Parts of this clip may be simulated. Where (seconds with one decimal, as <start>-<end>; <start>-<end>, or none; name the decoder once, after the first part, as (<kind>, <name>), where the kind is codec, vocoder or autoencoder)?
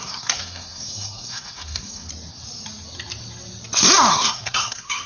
0.0-2.1 (codec, SNAC); 4.1-5.1